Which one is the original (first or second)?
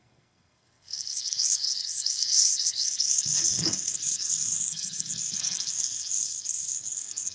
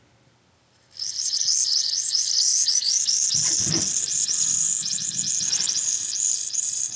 second